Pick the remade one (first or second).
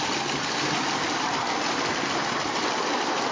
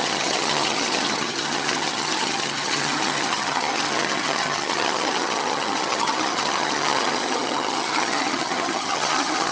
second